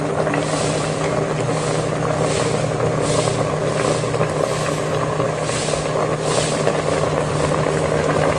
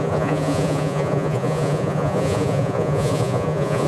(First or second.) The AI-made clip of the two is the second